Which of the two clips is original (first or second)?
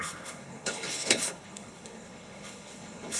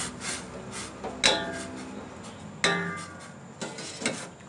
second